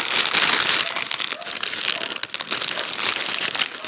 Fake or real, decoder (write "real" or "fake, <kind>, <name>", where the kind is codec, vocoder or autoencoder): real